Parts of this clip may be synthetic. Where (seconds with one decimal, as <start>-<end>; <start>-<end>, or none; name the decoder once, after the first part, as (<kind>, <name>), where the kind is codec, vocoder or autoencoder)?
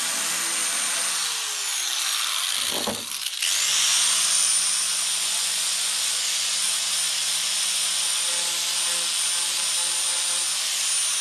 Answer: 3.7-6.9 (vocoder, Vocos); 7.4-8.3